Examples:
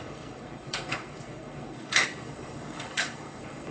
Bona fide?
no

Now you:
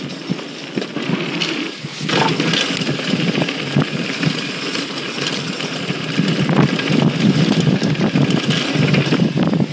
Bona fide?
yes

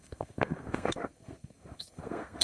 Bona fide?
no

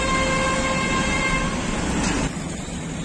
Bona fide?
yes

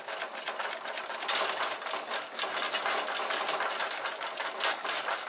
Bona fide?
yes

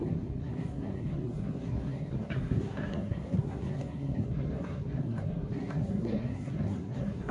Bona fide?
no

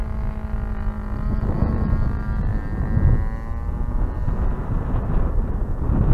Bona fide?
yes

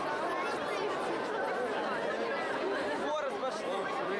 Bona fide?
yes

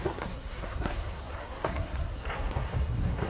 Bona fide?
no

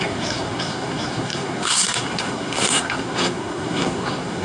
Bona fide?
no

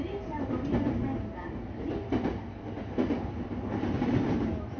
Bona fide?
yes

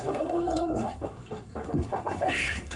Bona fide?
no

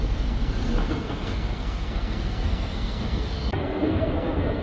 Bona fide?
no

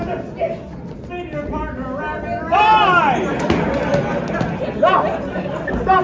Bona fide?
yes